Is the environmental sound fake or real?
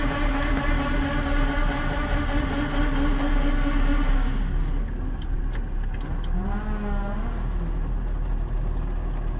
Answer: real